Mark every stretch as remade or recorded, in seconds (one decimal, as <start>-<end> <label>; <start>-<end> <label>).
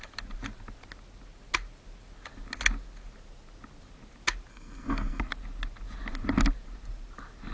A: 0.0-4.5 recorded; 4.5-5.2 remade; 5.2-7.5 recorded